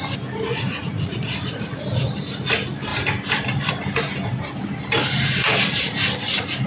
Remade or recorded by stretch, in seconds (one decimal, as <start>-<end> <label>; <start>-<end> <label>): 0.0-0.5 recorded; 0.5-1.8 remade; 1.8-6.7 recorded